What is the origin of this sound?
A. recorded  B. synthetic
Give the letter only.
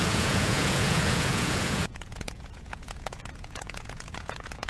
B